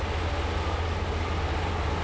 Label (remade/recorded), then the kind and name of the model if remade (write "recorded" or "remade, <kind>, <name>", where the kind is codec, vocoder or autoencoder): recorded